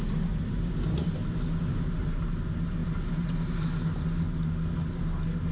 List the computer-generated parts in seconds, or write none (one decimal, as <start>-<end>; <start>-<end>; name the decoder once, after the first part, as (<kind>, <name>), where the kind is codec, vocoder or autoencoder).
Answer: none